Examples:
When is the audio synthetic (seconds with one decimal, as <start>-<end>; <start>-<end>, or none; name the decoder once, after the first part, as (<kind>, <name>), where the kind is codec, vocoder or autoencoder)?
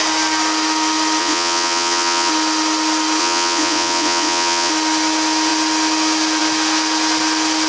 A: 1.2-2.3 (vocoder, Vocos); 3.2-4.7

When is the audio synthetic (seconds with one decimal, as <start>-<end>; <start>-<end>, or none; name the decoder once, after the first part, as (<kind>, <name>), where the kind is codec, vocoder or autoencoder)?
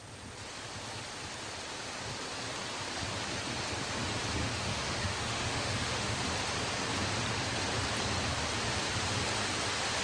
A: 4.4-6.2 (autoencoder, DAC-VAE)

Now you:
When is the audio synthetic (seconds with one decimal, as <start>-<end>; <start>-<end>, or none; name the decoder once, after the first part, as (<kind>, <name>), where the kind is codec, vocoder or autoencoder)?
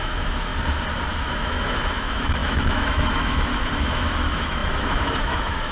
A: 0.0-0.5 (autoencoder, DAC-VAE); 1.1-5.7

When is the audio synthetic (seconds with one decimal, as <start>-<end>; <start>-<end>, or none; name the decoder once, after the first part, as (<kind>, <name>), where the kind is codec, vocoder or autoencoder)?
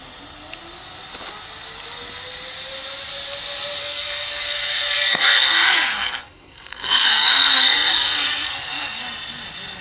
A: 3.8-9.0 (codec, SNAC)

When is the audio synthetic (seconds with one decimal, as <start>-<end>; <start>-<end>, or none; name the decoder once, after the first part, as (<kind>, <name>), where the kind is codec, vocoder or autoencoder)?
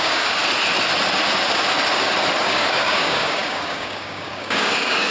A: 0.0-0.4 (codec, DAC); 2.4-5.1